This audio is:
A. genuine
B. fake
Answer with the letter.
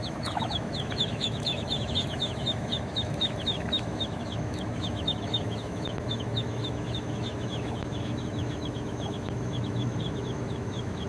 B